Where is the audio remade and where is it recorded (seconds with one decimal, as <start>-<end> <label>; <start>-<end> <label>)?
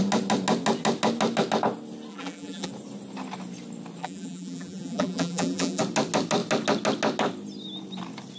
0.0-2.1 recorded; 2.1-2.7 remade; 2.7-4.0 recorded; 4.0-5.8 remade; 5.8-8.4 recorded